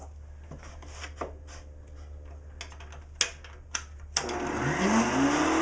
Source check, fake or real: real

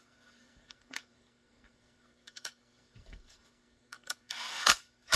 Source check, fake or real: fake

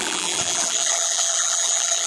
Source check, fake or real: fake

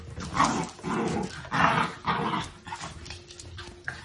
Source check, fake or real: real